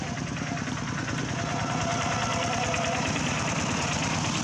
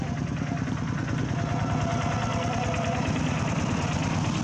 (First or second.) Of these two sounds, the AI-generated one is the first